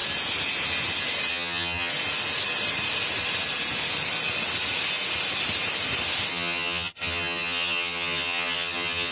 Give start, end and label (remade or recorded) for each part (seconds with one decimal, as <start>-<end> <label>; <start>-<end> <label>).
0.0-1.3 recorded; 1.3-1.9 remade; 1.9-6.3 recorded; 6.3-9.1 remade